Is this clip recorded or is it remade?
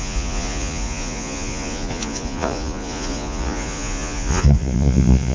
remade